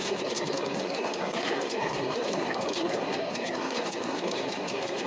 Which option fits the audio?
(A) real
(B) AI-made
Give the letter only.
B